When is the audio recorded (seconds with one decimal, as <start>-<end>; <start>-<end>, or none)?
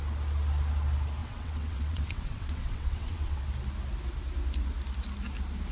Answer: 0.0-1.2; 3.4-5.7